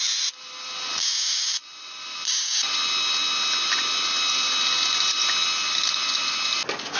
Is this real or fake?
real